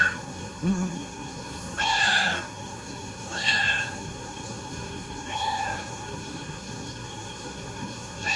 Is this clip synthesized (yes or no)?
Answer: yes